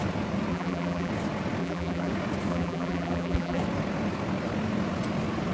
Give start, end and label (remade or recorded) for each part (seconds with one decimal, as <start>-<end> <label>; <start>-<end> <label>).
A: 0.0-0.5 recorded; 0.5-1.1 remade; 1.1-1.6 recorded; 1.6-2.1 remade; 2.1-2.5 recorded; 2.5-3.6 remade; 3.6-5.5 recorded